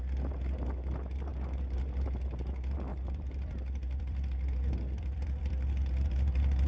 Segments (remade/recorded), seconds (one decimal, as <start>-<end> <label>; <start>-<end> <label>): 0.0-1.3 recorded; 1.3-1.8 remade; 1.8-2.9 recorded; 2.9-6.1 remade; 6.1-6.7 recorded